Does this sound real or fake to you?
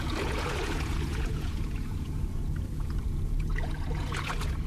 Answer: fake